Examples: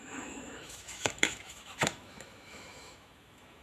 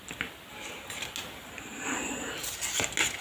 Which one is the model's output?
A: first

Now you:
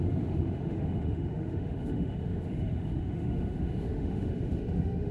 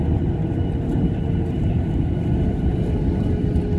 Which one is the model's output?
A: first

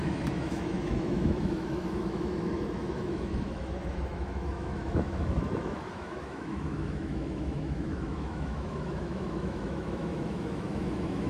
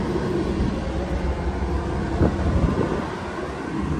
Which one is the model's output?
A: first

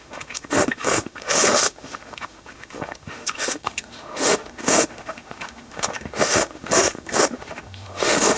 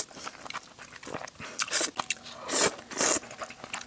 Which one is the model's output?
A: first